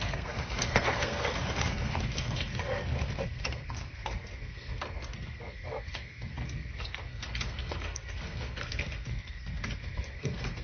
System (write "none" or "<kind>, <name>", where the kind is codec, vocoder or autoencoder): codec, SNAC